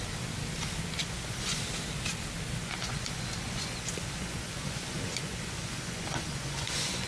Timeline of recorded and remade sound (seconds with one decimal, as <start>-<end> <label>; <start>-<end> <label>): 0.0-1.0 recorded; 1.0-1.6 remade; 1.6-2.6 recorded; 2.6-7.1 remade